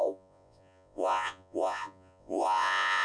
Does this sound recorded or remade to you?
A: remade